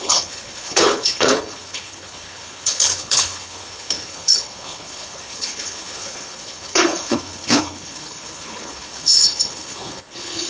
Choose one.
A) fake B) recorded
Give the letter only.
A